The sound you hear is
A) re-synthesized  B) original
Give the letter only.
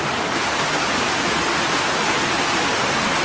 B